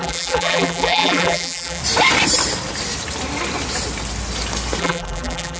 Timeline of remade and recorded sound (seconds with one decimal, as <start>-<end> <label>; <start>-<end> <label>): 0.0-1.8 remade; 1.8-4.8 recorded; 4.8-5.6 remade